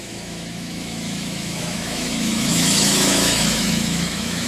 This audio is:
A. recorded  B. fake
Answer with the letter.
B